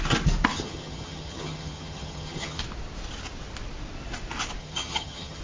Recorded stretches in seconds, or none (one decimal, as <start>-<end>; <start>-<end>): 0.0-0.5; 2.6-4.6